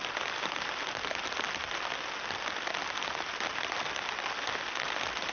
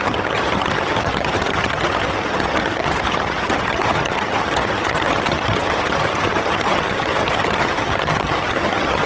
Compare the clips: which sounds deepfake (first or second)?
second